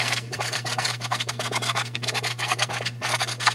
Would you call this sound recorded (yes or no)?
no